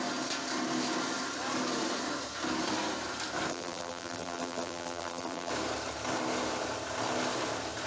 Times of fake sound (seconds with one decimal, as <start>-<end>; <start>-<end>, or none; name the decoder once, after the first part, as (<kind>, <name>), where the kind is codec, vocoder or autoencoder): 3.5-5.5 (vocoder, BigVGAN v2)